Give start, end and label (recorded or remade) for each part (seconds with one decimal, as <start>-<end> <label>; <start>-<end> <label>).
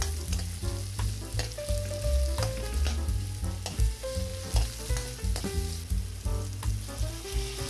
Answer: 0.0-7.7 recorded